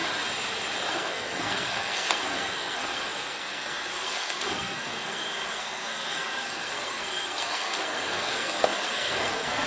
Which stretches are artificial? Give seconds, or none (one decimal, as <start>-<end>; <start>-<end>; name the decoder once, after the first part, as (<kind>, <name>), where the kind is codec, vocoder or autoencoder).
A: 0.9-9.7 (codec, SNAC)